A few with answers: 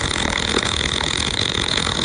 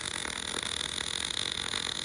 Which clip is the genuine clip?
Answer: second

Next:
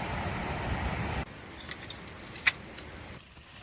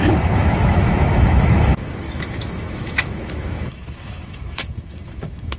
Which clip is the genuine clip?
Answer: first